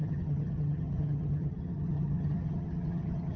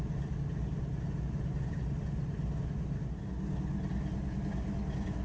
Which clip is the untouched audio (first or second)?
second